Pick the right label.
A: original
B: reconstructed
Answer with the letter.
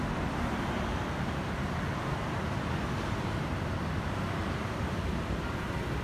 B